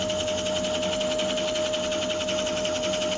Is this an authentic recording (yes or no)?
yes